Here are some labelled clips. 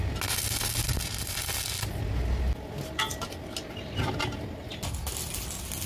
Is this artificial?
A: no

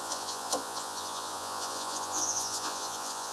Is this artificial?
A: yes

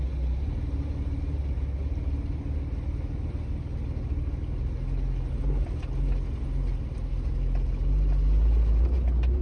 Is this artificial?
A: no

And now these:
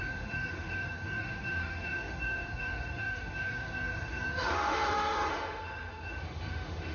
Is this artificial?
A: yes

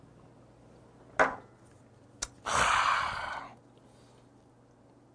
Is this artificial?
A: no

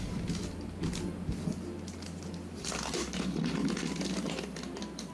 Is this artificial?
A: no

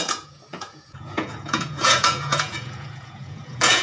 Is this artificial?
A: yes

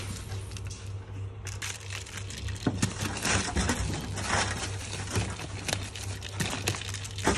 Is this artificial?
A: no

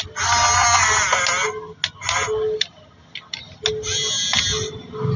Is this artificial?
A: no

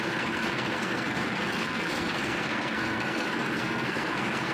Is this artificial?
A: yes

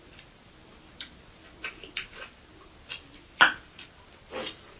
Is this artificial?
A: no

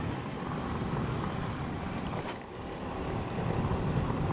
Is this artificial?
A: no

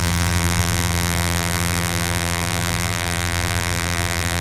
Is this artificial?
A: yes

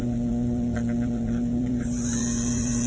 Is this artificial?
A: yes